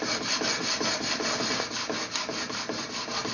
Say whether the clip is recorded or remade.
recorded